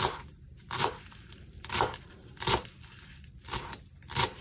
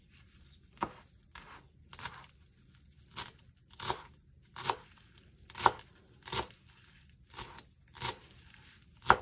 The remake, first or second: first